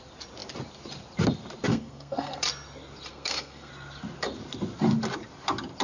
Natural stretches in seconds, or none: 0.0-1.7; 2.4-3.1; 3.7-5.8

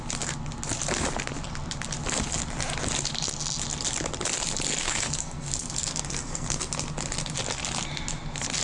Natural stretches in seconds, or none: 0.0-4.8; 6.7-8.6